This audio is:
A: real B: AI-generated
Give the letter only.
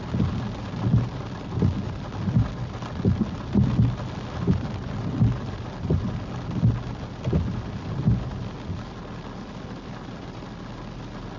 A